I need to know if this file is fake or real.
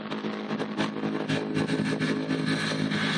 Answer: real